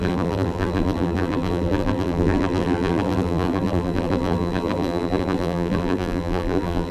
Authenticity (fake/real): fake